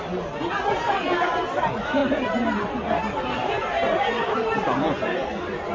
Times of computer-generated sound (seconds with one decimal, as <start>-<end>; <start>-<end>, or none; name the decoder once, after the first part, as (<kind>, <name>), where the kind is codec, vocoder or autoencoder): 3.4-4.8 (vocoder, BigVGAN v2); 5.2-5.7